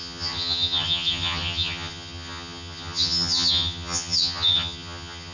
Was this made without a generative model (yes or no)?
no